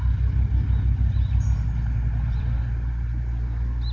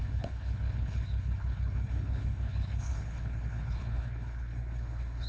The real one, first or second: first